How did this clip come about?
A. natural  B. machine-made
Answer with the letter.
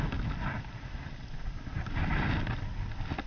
A